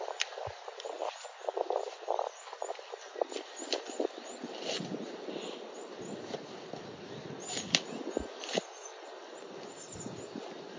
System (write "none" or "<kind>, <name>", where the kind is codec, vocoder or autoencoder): none